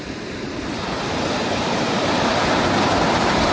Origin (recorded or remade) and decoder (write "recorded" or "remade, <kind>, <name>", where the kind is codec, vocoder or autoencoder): recorded